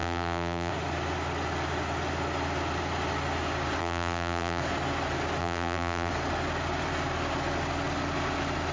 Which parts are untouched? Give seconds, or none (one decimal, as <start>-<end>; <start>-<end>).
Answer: 0.7-3.8; 4.6-5.4; 6.1-8.7